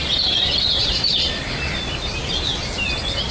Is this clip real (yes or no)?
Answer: yes